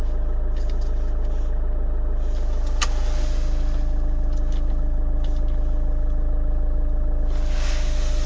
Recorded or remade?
recorded